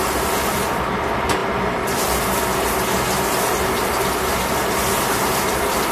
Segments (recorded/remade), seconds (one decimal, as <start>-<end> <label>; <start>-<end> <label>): 0.0-5.9 recorded